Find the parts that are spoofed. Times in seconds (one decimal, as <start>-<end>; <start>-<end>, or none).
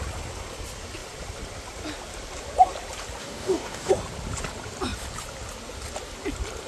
3.2-3.9